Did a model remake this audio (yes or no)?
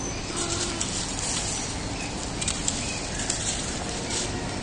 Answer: no